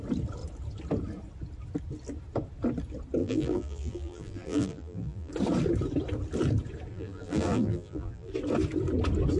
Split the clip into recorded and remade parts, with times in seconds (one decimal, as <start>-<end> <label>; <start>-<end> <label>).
0.0-3.2 recorded; 3.2-5.3 remade; 5.3-6.9 recorded; 6.9-8.3 remade; 8.3-9.4 recorded